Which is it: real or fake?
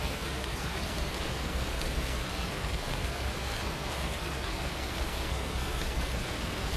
fake